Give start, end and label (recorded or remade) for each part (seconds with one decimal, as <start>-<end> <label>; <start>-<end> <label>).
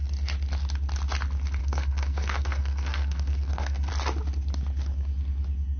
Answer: 0.0-1.6 recorded; 1.6-3.9 remade; 3.9-5.8 recorded